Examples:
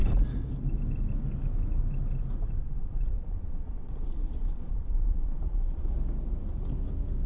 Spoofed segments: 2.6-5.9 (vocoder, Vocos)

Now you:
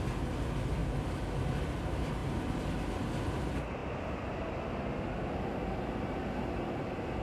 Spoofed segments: none

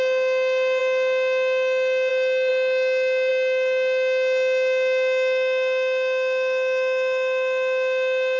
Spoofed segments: none

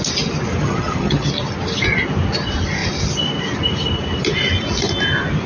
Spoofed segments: 0.6-1.3 (vocoder, HiFi-GAN)

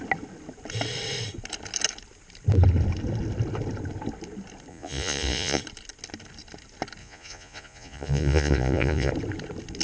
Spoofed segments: 4.7-5.6 (vocoder, Vocos); 7.0-9.1

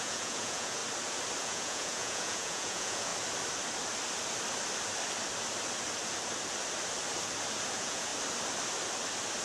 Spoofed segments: 0.0-0.8 (vocoder, Vocos); 1.4-3.1; 7.7-8.1

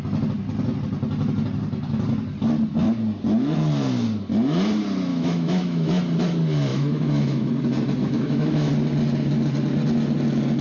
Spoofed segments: 5.1-6.0 (autoencoder, DAC-VAE); 6.7-7.5; 8.0-8.7

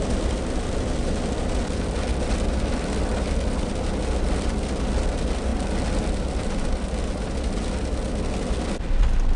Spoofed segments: none